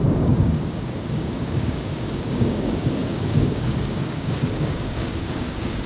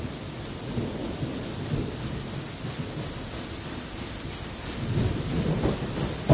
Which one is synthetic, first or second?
first